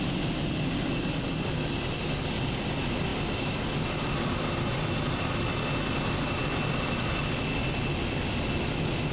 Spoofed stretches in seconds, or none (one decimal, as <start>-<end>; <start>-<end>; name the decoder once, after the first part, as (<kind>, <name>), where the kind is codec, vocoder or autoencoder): none